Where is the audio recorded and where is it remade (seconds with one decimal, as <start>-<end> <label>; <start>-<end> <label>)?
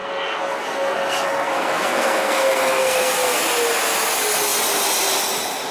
0.0-3.4 remade; 3.4-5.7 recorded